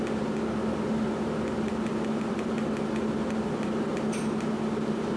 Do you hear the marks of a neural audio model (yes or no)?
no